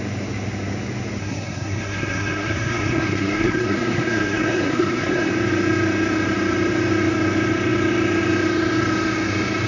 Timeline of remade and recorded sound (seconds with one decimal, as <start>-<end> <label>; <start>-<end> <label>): 0.0-1.2 recorded; 1.2-5.3 remade; 5.3-9.7 recorded